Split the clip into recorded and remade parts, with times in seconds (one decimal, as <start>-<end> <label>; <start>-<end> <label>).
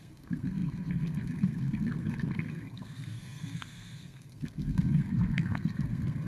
0.0-6.3 remade